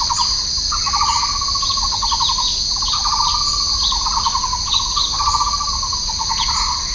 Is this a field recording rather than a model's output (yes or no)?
no